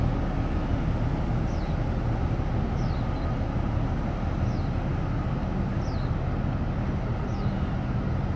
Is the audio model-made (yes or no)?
no